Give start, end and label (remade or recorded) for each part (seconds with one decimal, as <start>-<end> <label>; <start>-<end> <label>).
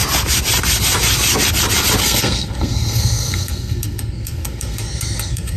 0.0-2.0 recorded; 2.0-5.6 remade